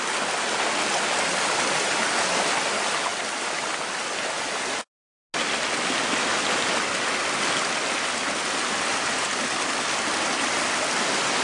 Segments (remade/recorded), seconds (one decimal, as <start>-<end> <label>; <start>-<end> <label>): 0.0-11.4 recorded